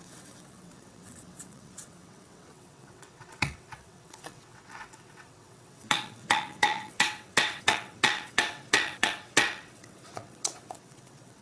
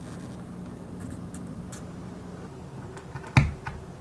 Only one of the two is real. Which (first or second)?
second